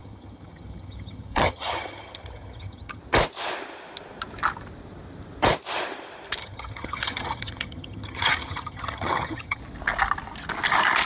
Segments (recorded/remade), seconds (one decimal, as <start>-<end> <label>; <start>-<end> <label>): 0.0-3.0 remade; 3.0-6.4 recorded; 6.4-9.6 remade; 9.6-11.1 recorded